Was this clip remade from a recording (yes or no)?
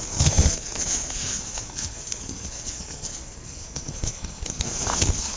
yes